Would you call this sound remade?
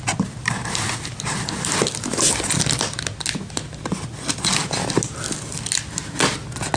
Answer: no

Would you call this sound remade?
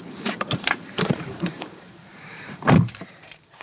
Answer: yes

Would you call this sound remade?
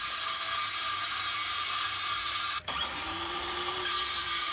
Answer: yes